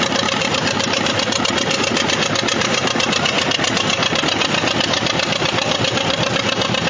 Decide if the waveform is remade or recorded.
recorded